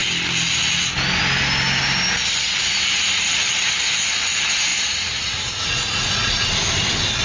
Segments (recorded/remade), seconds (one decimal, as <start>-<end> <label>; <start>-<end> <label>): 0.0-2.9 recorded; 2.9-3.8 remade; 3.8-4.7 recorded; 4.7-6.5 remade; 6.5-7.2 recorded